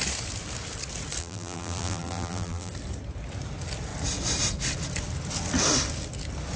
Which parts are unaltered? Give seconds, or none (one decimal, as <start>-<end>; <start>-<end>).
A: 0.0-1.2; 2.7-6.6